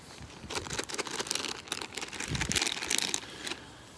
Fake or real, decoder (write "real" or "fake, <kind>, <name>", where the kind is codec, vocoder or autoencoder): real